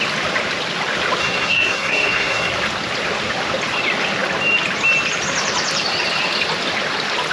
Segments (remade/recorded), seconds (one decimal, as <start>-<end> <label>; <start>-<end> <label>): 0.0-1.2 recorded; 1.2-2.5 remade; 2.5-7.3 recorded

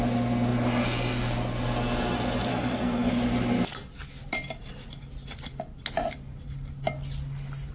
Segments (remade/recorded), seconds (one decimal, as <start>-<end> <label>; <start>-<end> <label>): 0.0-2.5 recorded; 2.5-3.1 remade; 3.1-7.7 recorded

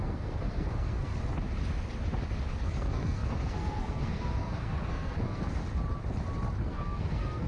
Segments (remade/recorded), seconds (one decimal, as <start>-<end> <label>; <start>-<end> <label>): 0.0-1.1 remade; 1.1-2.5 recorded; 2.5-5.6 remade; 5.6-6.6 recorded; 6.6-7.5 remade

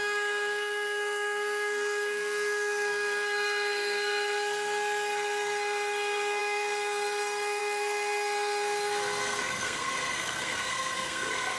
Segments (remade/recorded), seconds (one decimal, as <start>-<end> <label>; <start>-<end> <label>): 0.0-11.6 remade

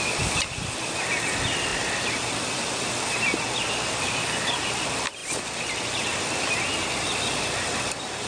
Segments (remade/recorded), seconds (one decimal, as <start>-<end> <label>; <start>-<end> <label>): 0.0-8.3 recorded

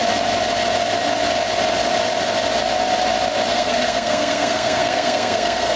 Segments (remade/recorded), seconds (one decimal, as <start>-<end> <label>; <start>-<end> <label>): 0.0-3.5 recorded; 3.5-5.8 remade